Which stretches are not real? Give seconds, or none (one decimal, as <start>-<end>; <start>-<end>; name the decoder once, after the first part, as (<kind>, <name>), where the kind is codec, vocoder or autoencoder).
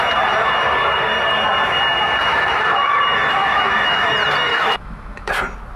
2.3-3.0 (autoencoder, DAC-VAE); 3.4-4.1; 4.5-5.3